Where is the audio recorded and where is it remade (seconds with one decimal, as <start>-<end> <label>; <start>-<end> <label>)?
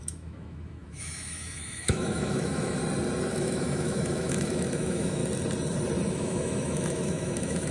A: 0.0-2.8 remade; 2.8-3.3 recorded; 3.3-5.2 remade; 5.2-6.1 recorded; 6.1-7.7 remade